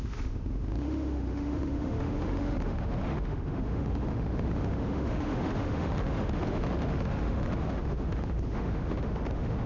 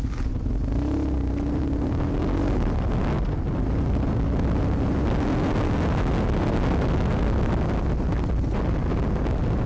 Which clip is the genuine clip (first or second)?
second